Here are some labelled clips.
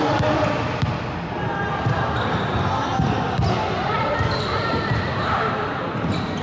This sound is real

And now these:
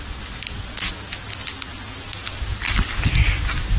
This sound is real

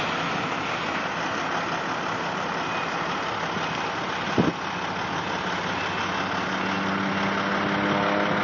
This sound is real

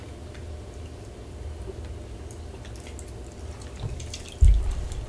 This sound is real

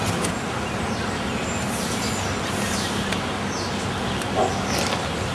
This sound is real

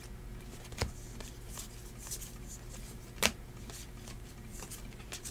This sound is real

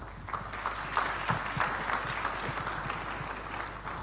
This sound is real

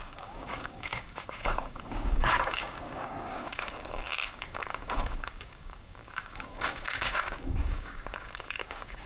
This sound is fake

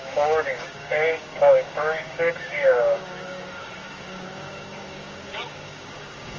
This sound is fake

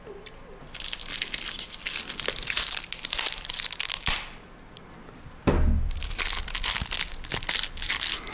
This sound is real